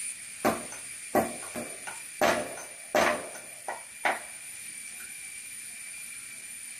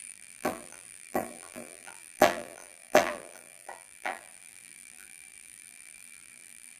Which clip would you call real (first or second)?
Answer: first